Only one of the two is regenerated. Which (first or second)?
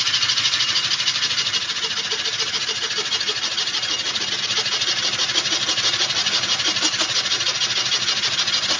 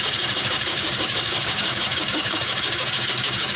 second